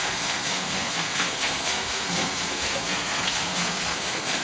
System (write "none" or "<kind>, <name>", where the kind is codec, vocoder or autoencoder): codec, SNAC